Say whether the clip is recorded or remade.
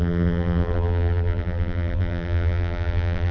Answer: remade